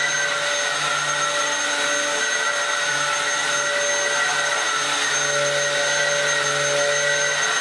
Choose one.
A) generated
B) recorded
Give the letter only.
B